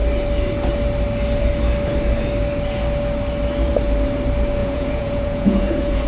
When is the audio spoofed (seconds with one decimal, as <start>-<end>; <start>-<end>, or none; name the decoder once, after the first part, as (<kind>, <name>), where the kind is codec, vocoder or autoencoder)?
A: 4.6-6.1 (vocoder, Vocos)